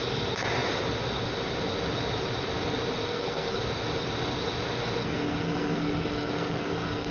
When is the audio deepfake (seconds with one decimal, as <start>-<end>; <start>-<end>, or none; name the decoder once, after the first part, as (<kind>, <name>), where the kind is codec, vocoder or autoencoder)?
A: 3.0-3.6 (codec, SNAC); 5.0-7.1